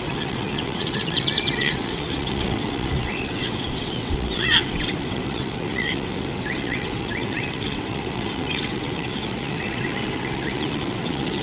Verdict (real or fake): fake